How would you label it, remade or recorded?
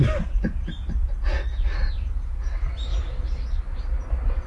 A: recorded